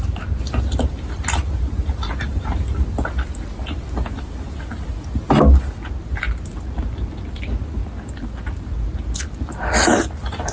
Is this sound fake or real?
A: real